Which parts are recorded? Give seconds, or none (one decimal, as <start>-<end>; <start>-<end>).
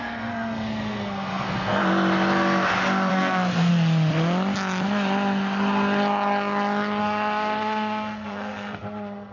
1.8-3.1; 3.7-7.0